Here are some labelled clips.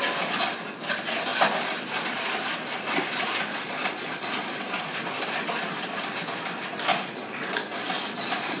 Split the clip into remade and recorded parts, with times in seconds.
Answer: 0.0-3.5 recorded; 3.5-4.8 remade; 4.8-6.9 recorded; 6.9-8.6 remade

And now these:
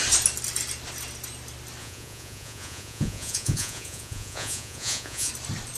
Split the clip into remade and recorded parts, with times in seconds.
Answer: 0.0-1.8 recorded; 1.8-5.3 remade; 5.3-5.8 recorded

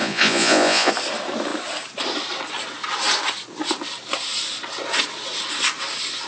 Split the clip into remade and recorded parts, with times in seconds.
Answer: 0.0-0.9 remade; 0.9-6.3 recorded

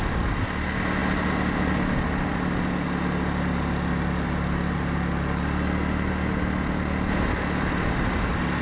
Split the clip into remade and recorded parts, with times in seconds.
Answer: 0.0-8.6 recorded

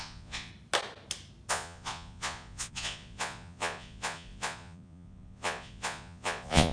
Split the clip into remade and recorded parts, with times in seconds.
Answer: 0.0-0.5 remade; 0.5-1.5 recorded; 1.5-6.7 remade

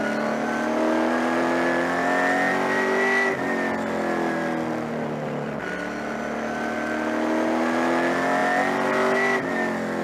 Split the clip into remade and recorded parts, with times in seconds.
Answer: 0.0-10.0 recorded

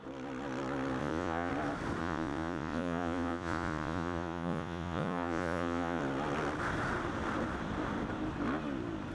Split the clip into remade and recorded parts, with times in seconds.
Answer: 0.0-1.0 recorded; 1.0-1.5 remade; 1.5-2.0 recorded; 2.0-6.0 remade; 6.0-9.1 recorded

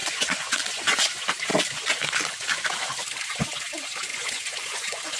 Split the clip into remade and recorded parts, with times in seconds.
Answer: 0.0-1.0 remade; 1.0-4.1 recorded; 4.1-5.2 remade